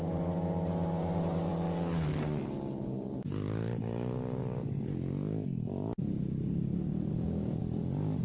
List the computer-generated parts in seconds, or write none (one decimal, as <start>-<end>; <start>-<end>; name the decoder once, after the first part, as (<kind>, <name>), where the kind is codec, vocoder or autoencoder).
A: 7.1-7.6 (codec, DAC)

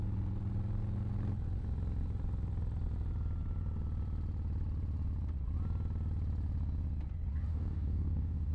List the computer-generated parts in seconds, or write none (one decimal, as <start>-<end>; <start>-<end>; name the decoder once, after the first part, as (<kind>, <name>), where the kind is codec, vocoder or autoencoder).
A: 7.5-8.5 (codec, DAC)

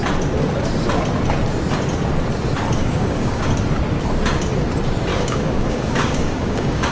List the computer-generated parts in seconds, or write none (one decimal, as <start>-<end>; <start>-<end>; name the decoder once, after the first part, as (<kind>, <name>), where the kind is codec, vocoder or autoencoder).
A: 2.8-3.5 (codec, DAC); 5.1-6.9

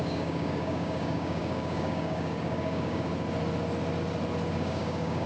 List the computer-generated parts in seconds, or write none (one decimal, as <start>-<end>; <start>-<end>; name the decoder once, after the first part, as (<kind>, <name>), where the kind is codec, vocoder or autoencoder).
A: 0.0-3.1 (codec, DAC); 4.5-5.3

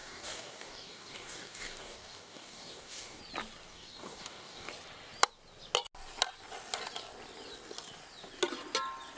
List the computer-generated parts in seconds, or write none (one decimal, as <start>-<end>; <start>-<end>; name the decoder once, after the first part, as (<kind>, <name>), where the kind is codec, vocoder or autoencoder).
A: 0.0-3.2 (codec, DAC); 3.7-4.7

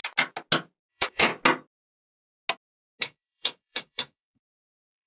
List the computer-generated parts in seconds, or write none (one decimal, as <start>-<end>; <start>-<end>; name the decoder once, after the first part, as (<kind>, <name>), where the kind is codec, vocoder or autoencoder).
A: 0.9-1.3 (codec, DAC); 3.0-5.1

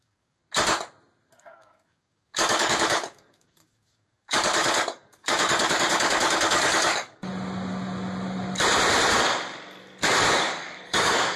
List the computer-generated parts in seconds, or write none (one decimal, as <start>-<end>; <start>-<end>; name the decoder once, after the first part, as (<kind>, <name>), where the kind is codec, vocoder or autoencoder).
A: 0.0-0.4 (codec, DAC); 1.4-7.3; 10.4-11.4